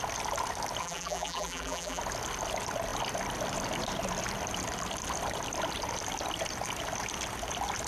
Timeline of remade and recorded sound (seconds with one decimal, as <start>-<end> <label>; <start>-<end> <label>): 0.0-0.8 recorded; 0.8-2.0 remade; 2.0-7.9 recorded